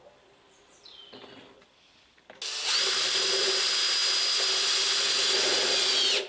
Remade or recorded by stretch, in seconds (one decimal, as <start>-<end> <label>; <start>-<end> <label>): 0.0-6.3 recorded